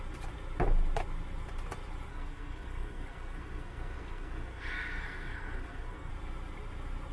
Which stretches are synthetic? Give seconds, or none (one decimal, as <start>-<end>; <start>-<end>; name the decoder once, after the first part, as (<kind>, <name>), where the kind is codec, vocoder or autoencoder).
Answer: 2.1-6.1 (codec, SNAC)